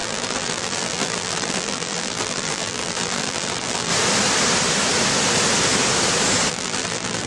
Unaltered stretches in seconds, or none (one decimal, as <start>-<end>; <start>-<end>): 3.9-6.5